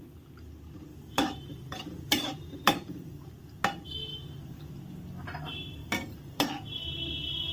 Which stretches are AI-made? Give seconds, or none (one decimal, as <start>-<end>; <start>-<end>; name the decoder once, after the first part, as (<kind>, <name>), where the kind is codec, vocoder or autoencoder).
0.9-3.3 (vocoder, BigVGAN v2); 4.1-4.7; 5.8-6.5